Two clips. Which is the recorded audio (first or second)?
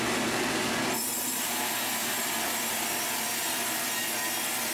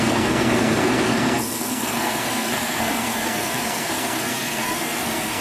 first